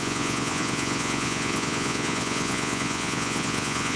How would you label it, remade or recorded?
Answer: remade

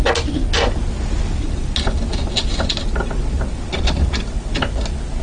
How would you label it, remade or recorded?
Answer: recorded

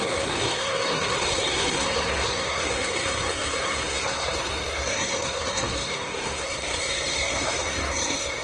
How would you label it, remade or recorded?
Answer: remade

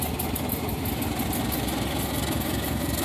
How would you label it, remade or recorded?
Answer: recorded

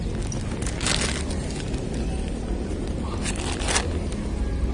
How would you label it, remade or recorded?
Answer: recorded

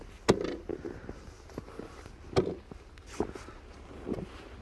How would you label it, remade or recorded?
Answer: recorded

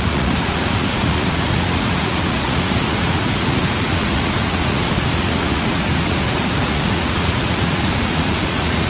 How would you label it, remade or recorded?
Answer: remade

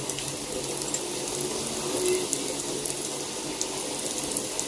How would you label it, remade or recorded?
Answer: recorded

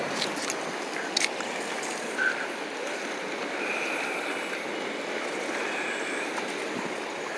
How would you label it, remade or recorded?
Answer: recorded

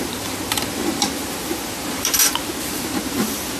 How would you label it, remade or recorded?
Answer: remade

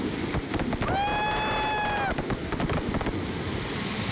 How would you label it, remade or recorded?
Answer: recorded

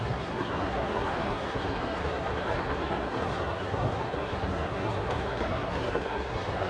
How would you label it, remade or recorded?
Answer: remade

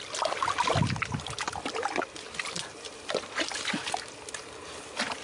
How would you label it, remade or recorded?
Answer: recorded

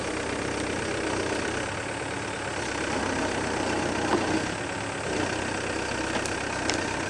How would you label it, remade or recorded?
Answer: recorded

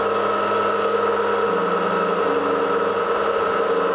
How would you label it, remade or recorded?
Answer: recorded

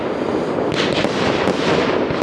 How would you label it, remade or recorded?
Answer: recorded